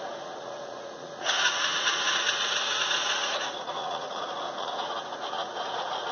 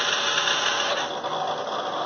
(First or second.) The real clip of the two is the second